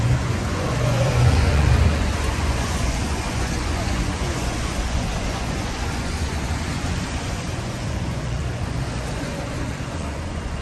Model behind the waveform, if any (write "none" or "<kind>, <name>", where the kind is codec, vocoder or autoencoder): vocoder, Vocos